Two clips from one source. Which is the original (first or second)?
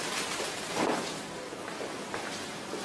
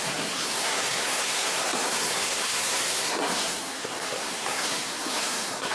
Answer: first